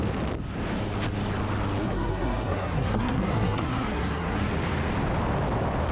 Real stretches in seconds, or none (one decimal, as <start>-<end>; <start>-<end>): 0.0-1.8; 4.5-5.9